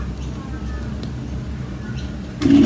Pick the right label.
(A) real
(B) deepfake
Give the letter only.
A